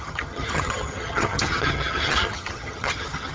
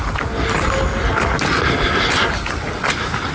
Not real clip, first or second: first